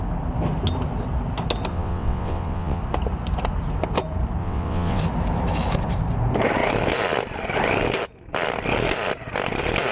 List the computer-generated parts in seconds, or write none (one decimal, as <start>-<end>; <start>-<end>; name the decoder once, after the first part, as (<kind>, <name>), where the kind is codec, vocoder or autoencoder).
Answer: 1.7-2.8 (vocoder, WaveNeXt); 4.4-5.0